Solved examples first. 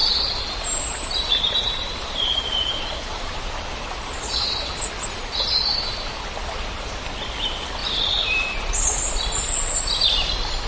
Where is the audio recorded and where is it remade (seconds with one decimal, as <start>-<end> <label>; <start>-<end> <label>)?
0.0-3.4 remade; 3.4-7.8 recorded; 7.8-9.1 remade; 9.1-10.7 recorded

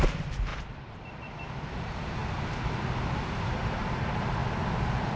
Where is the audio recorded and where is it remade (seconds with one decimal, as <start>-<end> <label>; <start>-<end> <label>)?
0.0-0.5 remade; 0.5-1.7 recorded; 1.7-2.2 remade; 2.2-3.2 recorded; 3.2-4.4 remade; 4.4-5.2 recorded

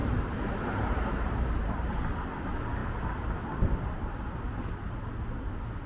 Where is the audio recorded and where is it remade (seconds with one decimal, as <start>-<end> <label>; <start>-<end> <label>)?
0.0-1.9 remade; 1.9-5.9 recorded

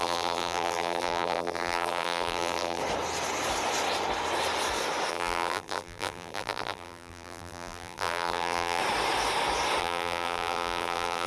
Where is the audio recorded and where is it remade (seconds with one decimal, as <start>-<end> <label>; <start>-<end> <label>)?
0.0-2.8 remade; 2.8-5.1 recorded; 5.1-8.8 remade; 8.8-9.8 recorded; 9.8-11.3 remade

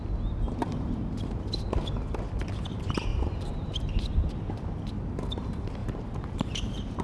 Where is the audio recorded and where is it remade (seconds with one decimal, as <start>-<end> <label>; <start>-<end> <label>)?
0.0-0.7 recorded; 0.7-1.5 remade; 1.5-3.1 recorded; 3.1-4.0 remade; 4.0-5.8 recorded; 5.8-7.0 remade

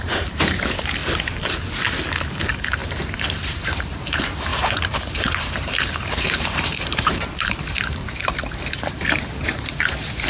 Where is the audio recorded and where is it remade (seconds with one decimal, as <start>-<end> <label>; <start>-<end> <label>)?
0.0-1.0 remade; 1.0-2.4 recorded; 2.4-10.3 remade